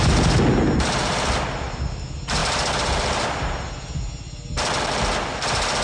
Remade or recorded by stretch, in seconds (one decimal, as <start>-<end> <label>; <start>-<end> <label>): 0.0-5.8 recorded